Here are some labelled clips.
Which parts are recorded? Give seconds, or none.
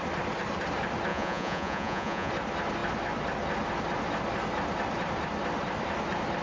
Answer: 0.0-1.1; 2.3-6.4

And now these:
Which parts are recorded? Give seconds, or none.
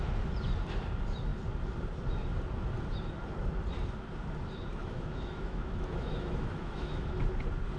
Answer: 0.0-4.8; 7.2-7.8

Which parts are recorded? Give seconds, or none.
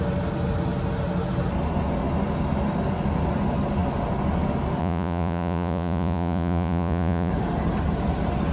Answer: 0.0-4.8; 7.3-8.5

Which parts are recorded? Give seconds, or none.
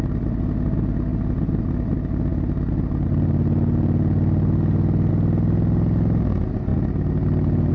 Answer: 0.0-7.7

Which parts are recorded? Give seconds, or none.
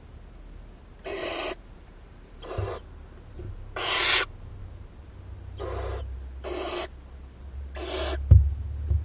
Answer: 0.0-1.1; 2.5-9.0